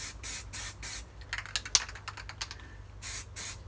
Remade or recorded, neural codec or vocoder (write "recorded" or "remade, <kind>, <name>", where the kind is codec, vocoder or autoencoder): recorded